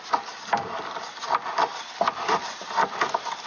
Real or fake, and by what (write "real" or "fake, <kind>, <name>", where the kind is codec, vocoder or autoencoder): real